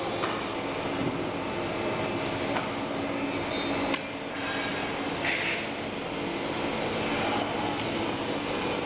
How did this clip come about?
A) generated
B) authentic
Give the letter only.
B